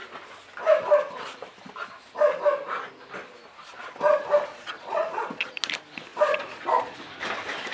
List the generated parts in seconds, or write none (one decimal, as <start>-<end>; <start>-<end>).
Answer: 4.5-5.5; 6.1-7.0

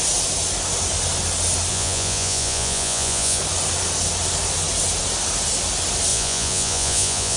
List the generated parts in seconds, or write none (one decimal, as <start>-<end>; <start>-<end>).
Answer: 1.7-3.4; 6.1-7.4

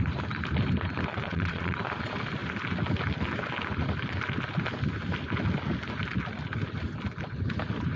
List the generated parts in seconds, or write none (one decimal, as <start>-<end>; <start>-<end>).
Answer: 1.1-1.8